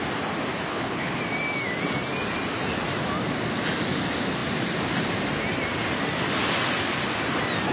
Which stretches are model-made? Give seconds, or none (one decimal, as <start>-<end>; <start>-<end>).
0.7-1.2